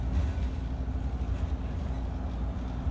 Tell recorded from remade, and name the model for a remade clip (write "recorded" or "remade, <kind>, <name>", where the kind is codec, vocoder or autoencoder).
recorded